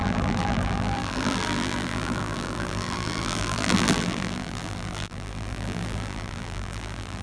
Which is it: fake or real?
fake